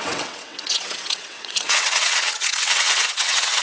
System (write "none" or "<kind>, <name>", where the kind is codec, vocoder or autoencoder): vocoder, WaveNeXt